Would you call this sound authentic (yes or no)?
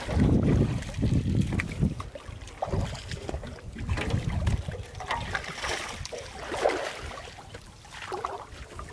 yes